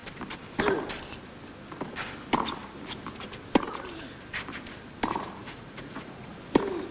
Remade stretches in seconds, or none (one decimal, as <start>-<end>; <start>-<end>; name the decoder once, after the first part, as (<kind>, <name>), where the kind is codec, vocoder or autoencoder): 5.4-6.3 (vocoder, Vocos)